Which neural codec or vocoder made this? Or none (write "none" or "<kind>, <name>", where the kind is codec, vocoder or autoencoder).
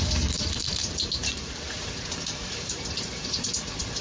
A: vocoder, BigVGAN v2